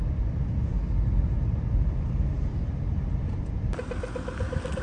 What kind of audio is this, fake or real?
real